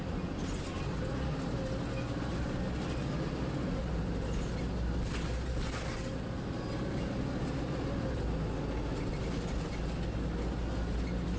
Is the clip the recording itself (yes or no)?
yes